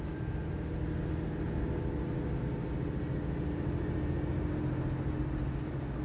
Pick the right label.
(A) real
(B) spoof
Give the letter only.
A